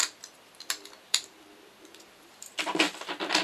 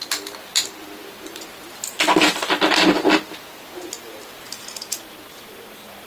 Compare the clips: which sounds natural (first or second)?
second